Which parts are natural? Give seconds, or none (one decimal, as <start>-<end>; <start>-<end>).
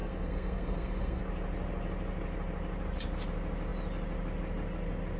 1.2-5.2